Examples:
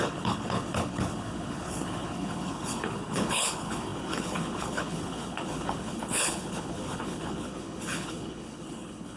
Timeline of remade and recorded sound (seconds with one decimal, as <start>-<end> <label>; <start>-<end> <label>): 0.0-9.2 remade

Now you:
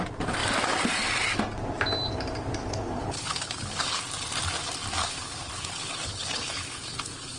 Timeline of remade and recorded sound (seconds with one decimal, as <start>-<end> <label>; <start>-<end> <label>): 0.0-2.6 recorded; 2.6-4.0 remade; 4.0-5.0 recorded; 5.0-7.4 remade

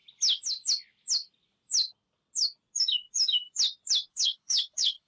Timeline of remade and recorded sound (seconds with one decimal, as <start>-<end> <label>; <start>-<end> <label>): 0.0-4.1 recorded; 4.1-5.1 remade